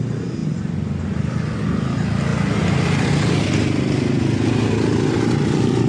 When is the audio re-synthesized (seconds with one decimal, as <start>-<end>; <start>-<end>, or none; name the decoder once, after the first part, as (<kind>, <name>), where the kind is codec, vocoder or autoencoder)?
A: 0.4-1.8 (vocoder, BigVGAN v2); 2.3-5.9